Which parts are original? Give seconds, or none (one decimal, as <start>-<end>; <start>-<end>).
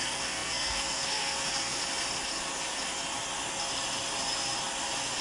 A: 1.8-5.2